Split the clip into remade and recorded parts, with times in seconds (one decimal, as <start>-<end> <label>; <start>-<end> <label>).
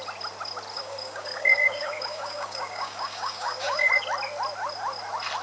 0.0-0.7 recorded; 0.7-3.9 remade; 3.9-5.4 recorded